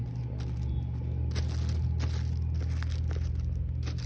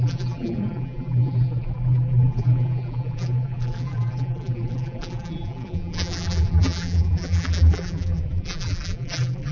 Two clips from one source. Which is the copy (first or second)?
second